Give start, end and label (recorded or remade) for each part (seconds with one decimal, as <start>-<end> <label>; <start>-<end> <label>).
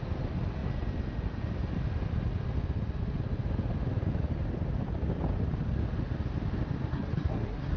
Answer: 0.0-6.9 recorded; 6.9-7.8 remade